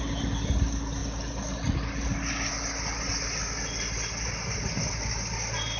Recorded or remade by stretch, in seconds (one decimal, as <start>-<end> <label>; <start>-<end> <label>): 0.0-5.8 recorded